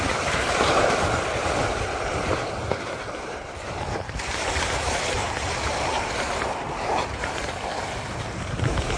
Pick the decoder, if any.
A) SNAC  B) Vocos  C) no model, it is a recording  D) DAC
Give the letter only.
C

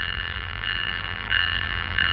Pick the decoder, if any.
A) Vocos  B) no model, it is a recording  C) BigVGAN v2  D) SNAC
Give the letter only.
C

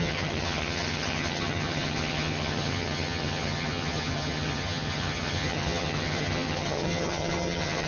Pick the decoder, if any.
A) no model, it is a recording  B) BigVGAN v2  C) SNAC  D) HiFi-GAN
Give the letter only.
D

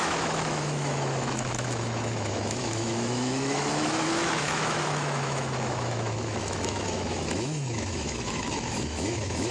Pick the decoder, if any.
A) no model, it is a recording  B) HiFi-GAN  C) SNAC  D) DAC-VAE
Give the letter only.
D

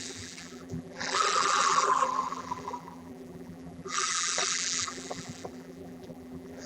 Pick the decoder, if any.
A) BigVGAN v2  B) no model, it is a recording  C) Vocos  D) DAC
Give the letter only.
A